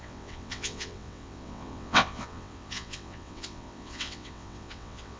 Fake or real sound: fake